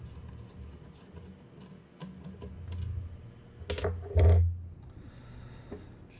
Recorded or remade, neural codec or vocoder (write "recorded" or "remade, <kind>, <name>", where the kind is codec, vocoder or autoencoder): recorded